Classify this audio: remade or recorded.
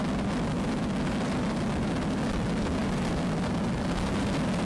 recorded